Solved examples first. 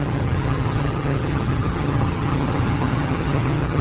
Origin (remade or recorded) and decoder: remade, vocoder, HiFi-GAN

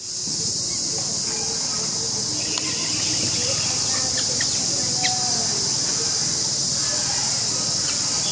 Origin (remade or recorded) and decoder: recorded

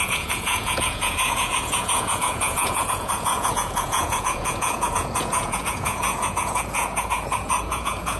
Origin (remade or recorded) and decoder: remade, vocoder, Vocos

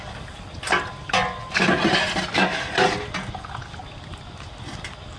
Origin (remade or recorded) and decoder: recorded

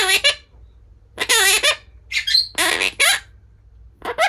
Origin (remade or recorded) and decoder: recorded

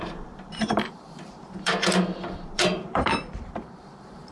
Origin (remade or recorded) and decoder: remade, vocoder, BigVGAN v2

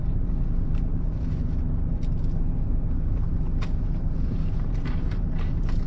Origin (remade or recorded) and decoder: remade, vocoder, BigVGAN v2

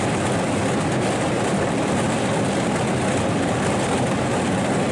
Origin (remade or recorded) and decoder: recorded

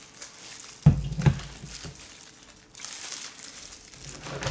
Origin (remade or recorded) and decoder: recorded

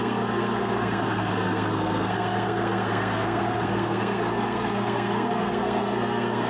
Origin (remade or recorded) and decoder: remade, codec, SNAC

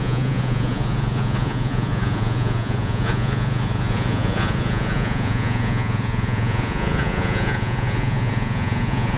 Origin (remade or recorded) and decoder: remade, vocoder, Vocos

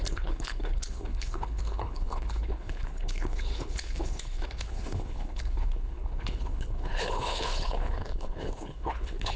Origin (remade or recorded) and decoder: remade, codec, HILCodec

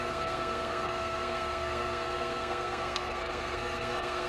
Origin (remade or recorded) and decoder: remade, codec, SNAC